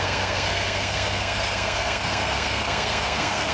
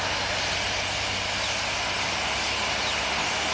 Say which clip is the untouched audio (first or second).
second